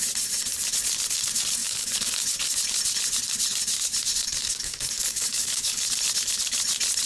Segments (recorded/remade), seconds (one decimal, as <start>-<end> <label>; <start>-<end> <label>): 0.0-1.6 recorded; 1.6-2.1 remade; 2.1-4.2 recorded; 4.2-5.9 remade; 5.9-7.1 recorded